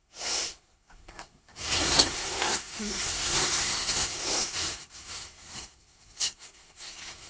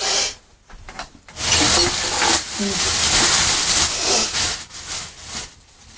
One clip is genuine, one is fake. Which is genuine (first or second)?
second